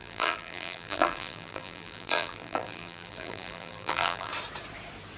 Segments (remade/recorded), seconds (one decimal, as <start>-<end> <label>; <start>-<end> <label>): 0.0-4.3 remade; 4.3-5.2 recorded